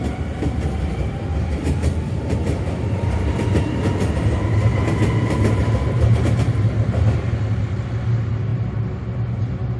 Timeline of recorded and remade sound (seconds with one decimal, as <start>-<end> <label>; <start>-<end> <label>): 0.0-9.8 recorded